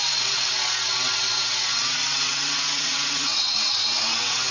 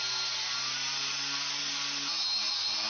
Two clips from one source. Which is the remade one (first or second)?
first